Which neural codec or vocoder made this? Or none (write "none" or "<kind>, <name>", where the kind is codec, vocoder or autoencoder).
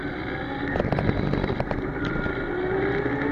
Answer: none